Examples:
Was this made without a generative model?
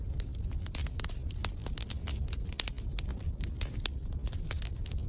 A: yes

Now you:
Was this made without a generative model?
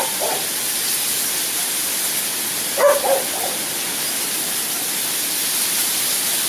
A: yes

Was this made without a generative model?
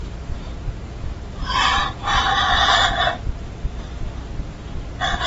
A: yes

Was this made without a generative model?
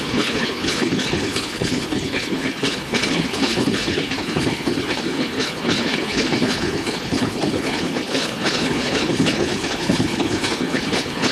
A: no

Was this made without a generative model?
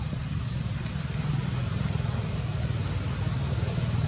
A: yes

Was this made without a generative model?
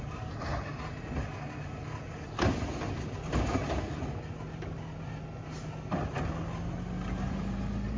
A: yes